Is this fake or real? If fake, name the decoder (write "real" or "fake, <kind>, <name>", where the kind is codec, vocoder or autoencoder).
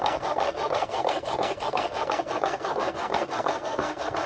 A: fake, codec, SNAC